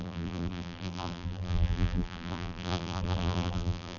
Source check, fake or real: fake